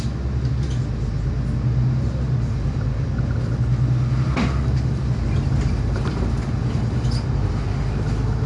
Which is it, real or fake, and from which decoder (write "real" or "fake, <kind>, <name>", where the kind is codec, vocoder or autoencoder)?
real